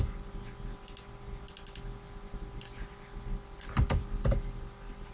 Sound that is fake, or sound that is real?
real